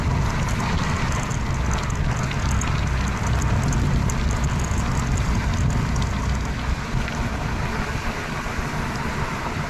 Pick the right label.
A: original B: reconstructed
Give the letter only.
A